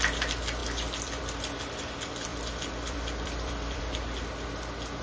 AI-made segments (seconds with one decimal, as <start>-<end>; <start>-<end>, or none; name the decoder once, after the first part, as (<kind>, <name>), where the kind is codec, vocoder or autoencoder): 0.6-1.2 (vocoder, BigVGAN v2); 2.3-3.8